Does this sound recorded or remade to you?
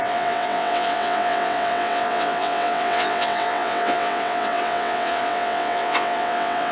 remade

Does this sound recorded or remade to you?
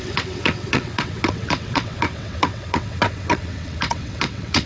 remade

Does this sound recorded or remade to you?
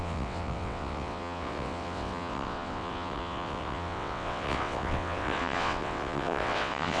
remade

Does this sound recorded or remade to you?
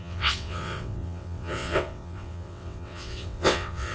remade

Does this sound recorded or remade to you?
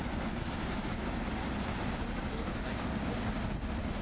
recorded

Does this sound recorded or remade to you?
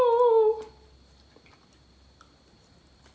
recorded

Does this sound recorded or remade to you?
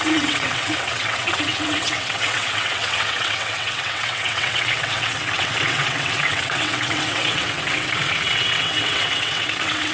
remade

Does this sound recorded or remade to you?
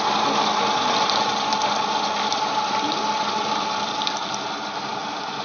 recorded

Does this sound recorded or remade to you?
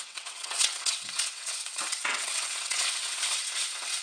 remade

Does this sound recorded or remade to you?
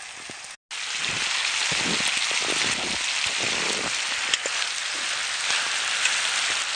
recorded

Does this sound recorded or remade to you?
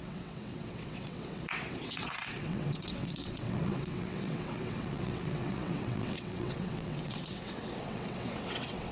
remade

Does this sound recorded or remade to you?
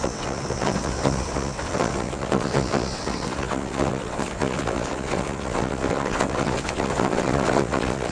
remade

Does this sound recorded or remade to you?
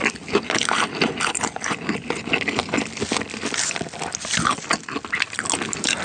recorded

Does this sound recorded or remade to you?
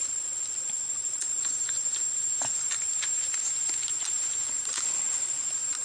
recorded